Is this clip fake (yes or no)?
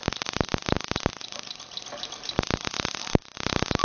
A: no